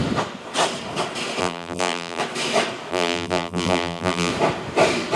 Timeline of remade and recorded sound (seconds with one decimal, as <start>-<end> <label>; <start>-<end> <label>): 0.0-1.4 recorded; 1.4-2.2 remade; 2.2-2.9 recorded; 2.9-4.3 remade; 4.3-5.2 recorded